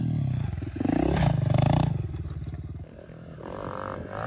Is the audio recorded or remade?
recorded